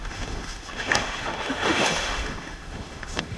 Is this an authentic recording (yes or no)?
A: no